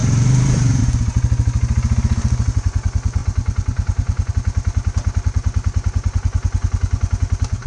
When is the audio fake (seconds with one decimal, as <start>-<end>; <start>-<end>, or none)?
0.0-0.8; 3.2-4.3

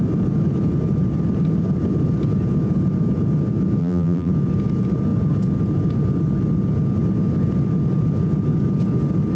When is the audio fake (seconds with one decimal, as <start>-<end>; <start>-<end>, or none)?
3.8-4.3

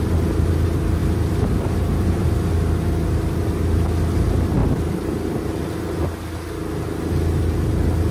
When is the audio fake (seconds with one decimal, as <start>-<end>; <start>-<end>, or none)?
1.0-2.5; 4.6-6.0

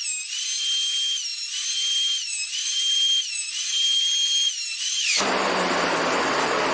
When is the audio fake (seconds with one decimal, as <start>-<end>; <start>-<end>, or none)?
1.3-5.3

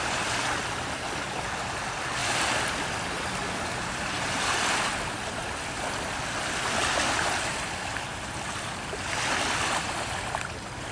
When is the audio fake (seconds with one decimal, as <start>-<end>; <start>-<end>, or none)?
0.0-2.2; 2.7-10.9

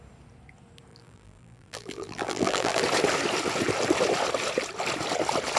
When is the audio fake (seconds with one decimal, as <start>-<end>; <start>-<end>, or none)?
0.9-2.8

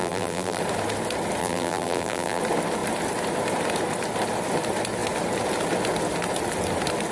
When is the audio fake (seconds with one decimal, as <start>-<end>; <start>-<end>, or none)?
0.0-0.6; 1.4-2.4